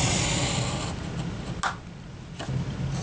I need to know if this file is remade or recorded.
recorded